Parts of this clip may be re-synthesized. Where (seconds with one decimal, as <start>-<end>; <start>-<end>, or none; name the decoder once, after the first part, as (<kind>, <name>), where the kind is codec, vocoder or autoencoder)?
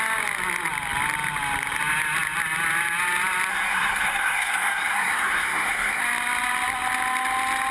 3.5-6.0 (codec, SNAC)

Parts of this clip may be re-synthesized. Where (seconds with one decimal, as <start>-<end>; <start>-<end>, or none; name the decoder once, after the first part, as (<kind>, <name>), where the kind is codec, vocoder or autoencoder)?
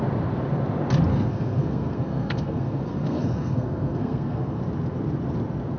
1.1-4.6 (codec, SNAC)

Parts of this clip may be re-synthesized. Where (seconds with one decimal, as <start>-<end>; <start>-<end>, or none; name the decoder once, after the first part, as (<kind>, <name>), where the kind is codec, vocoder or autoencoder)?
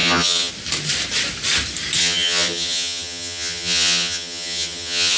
0.0-0.5 (vocoder, HiFi-GAN); 2.0-5.2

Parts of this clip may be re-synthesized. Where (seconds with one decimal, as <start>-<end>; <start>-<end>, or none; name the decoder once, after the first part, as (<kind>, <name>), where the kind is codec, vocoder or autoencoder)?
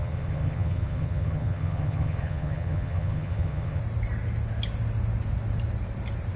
0.0-3.8 (vocoder, HiFi-GAN)